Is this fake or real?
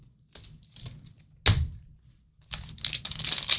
real